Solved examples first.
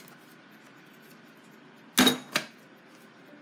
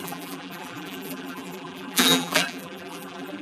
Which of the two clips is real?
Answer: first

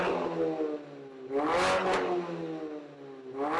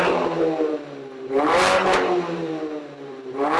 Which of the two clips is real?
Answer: first